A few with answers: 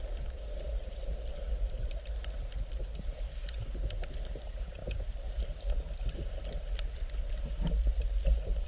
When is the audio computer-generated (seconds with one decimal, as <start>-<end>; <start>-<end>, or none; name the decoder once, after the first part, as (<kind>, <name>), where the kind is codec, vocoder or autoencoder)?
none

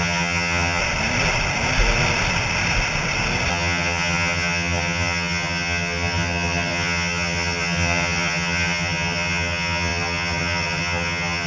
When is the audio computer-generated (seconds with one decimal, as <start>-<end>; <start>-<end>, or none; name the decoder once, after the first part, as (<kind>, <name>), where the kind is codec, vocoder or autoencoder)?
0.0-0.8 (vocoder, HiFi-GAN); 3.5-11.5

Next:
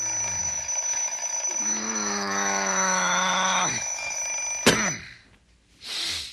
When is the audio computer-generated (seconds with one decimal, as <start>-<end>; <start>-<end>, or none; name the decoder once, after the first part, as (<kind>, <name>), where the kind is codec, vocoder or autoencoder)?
0.4-4.2 (autoencoder, DAC-VAE)

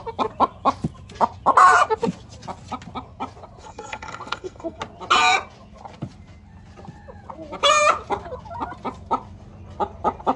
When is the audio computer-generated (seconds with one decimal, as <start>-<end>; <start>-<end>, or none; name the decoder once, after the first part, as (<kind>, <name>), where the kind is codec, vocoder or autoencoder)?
3.6-4.8 (codec, SNAC)

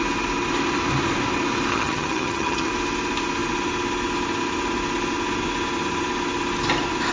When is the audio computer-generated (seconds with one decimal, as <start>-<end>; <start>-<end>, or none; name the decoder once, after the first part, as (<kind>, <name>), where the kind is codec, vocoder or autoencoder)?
1.7-2.7 (vocoder, HiFi-GAN)

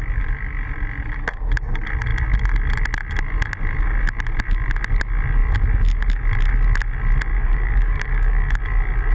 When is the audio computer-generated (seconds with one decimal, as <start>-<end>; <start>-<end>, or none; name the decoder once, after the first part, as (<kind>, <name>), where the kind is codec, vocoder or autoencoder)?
7.3-8.6 (codec, DAC)

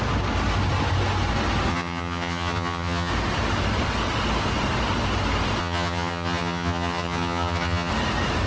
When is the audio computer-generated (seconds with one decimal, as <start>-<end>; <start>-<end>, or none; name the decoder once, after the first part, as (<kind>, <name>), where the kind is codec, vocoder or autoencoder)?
1.7-3.1 (vocoder, HiFi-GAN); 5.6-7.9